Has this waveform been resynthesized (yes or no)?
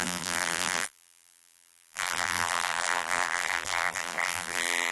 yes